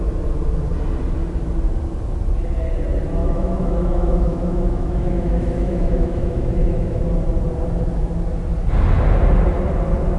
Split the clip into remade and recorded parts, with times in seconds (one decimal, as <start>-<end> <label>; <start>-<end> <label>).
0.0-3.2 recorded; 3.2-7.0 remade; 7.0-10.2 recorded